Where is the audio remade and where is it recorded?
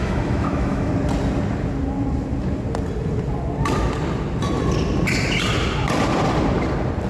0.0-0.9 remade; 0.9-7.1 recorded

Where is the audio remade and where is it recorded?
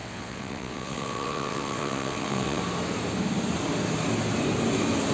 0.0-2.6 remade; 2.6-5.1 recorded